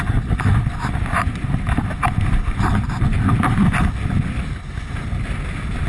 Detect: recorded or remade recorded